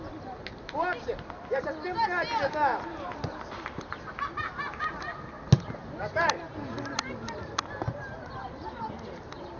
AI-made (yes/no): no